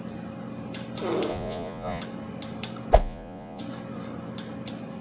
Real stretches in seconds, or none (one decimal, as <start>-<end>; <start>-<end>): 0.0-1.3; 2.0-3.0; 3.6-5.0